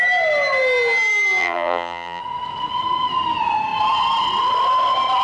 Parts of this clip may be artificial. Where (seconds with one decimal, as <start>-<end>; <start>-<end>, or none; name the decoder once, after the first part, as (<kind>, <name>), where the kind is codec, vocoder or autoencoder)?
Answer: 1.4-2.2 (vocoder, BigVGAN v2)